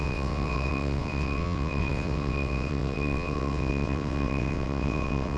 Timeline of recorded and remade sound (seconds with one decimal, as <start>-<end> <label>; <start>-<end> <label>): 0.0-5.4 remade